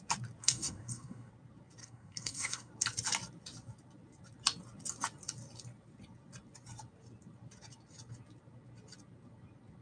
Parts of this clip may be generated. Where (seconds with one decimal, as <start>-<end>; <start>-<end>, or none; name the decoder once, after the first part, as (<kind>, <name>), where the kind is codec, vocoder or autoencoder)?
0.4-1.3 (codec, SNAC); 1.8-2.7